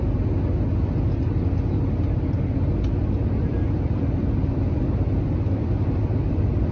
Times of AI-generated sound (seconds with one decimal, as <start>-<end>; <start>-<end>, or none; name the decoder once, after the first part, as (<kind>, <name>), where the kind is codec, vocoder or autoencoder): none